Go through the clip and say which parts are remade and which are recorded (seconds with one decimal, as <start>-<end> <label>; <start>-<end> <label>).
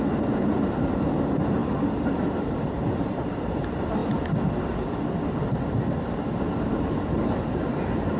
0.0-4.0 remade; 4.0-6.7 recorded; 6.7-7.7 remade; 7.7-8.2 recorded